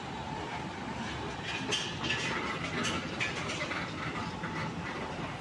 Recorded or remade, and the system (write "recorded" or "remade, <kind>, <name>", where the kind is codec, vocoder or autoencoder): recorded